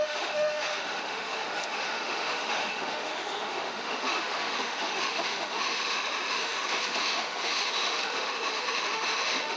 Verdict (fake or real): fake